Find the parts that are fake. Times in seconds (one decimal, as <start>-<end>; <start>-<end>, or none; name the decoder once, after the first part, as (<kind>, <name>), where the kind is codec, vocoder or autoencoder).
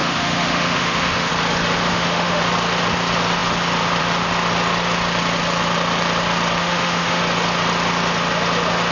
0.0-1.3 (autoencoder, DAC-VAE); 1.9-2.4; 6.6-7.2